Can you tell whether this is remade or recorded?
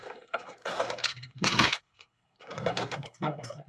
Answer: remade